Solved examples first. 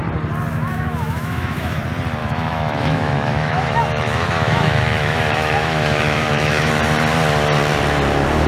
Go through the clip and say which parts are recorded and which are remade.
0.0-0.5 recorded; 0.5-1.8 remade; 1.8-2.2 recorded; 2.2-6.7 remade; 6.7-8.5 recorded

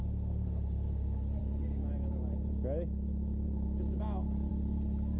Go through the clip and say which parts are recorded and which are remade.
0.0-5.2 recorded